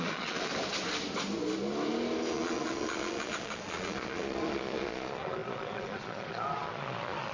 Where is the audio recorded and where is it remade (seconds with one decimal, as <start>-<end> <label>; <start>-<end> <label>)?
0.0-0.5 remade; 0.5-2.3 recorded; 2.3-7.3 remade